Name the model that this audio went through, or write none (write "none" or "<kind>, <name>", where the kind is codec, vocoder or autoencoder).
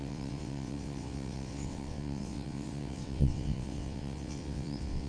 vocoder, WaveNeXt